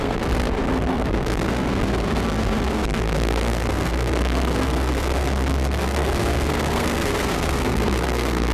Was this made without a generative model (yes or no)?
no